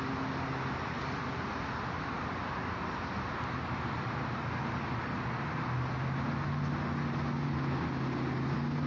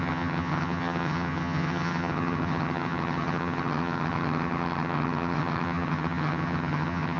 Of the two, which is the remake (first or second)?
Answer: second